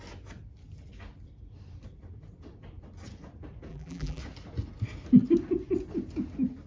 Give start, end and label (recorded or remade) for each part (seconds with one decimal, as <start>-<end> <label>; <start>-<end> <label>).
0.0-3.7 recorded; 3.7-4.2 remade; 4.2-6.7 recorded